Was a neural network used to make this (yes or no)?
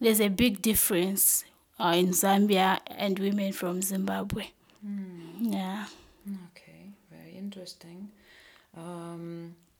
no